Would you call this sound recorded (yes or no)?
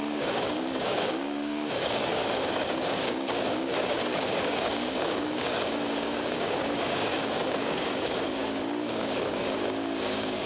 no